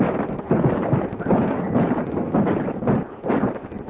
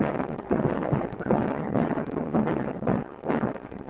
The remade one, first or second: second